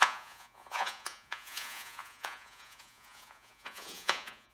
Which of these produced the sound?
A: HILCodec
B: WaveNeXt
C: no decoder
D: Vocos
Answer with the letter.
D